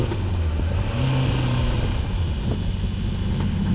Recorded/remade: recorded